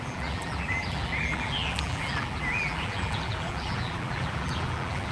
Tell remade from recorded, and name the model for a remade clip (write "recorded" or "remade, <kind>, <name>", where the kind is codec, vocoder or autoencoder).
remade, vocoder, BigVGAN v2